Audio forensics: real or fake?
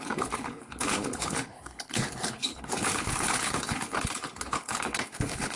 fake